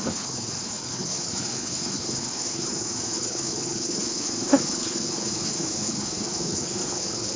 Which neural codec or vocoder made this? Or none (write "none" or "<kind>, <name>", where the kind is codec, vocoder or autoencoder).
codec, HILCodec